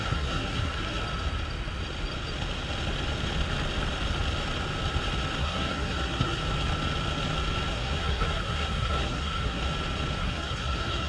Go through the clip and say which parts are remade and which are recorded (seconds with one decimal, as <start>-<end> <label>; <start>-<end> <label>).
0.0-1.0 remade; 1.0-5.4 recorded; 5.4-6.4 remade; 6.4-7.7 recorded; 7.7-9.6 remade; 9.6-10.2 recorded; 10.2-11.1 remade